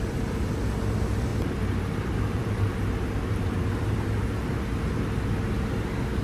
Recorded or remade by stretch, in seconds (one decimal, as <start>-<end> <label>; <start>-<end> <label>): 0.0-1.3 recorded; 1.3-5.0 remade; 5.0-6.2 recorded